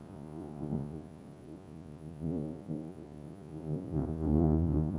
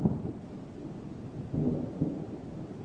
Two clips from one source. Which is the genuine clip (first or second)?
second